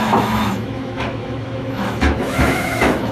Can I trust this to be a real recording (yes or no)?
no